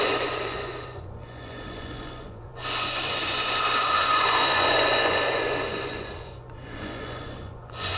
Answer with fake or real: fake